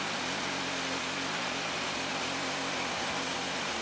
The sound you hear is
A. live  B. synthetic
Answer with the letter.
A